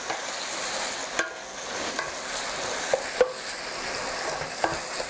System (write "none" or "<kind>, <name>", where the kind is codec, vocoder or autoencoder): none